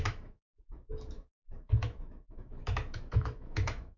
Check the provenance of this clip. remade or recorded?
remade